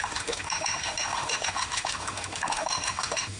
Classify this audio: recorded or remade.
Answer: remade